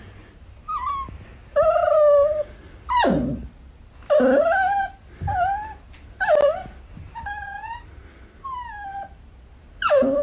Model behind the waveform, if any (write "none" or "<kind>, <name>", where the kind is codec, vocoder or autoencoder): none